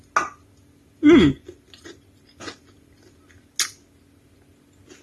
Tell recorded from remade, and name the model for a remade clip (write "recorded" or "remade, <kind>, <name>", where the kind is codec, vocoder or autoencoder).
recorded